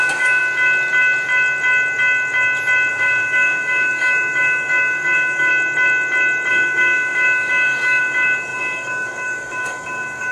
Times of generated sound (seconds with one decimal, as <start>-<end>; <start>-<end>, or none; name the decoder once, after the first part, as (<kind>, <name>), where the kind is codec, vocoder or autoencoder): 0.0-0.4 (codec, DAC); 2.9-5.5; 6.5-10.3